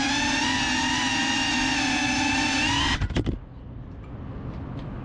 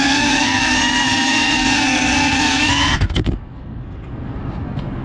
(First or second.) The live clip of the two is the first